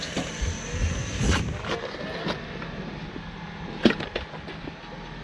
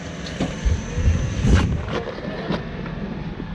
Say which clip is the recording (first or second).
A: first